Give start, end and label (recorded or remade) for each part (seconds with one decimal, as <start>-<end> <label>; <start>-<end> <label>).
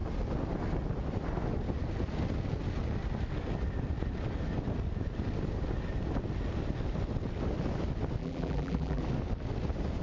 0.0-8.2 recorded; 8.2-9.0 remade; 9.0-10.0 recorded